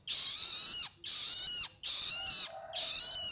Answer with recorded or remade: recorded